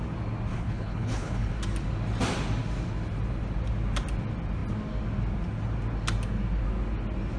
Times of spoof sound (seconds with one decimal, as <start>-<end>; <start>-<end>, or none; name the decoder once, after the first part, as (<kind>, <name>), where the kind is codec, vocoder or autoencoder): 0.5-1.5 (codec, HILCodec)